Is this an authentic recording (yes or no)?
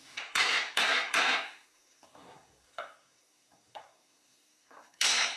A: no